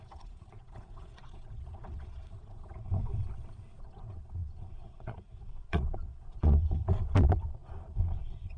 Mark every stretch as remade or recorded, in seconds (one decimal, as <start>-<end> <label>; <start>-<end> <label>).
0.0-3.1 remade; 3.1-3.8 recorded; 3.8-8.6 remade